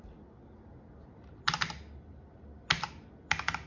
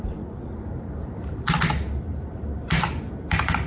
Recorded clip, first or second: first